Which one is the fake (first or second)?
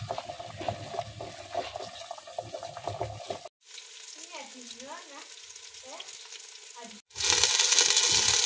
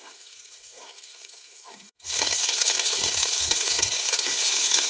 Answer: second